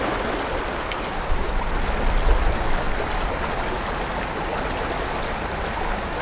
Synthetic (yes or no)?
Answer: no